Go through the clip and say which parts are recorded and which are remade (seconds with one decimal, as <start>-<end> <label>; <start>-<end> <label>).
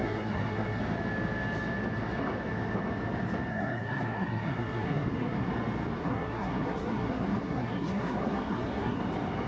0.0-0.8 remade; 0.8-3.5 recorded; 3.5-5.5 remade; 5.5-6.0 recorded; 6.0-9.0 remade; 9.0-9.5 recorded